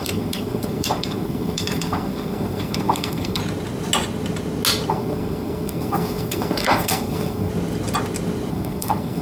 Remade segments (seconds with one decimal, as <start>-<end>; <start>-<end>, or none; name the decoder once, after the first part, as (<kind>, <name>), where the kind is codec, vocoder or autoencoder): 0.0-3.4 (codec, SNAC); 4.9-7.5; 8.5-9.2